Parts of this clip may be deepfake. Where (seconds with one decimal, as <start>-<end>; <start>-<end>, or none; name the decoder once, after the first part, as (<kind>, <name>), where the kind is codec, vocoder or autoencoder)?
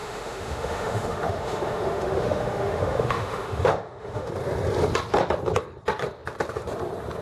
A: 0.0-4.3 (autoencoder, DAC-VAE)